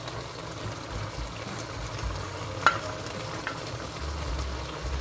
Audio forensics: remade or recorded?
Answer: recorded